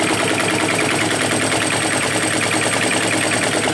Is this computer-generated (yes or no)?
no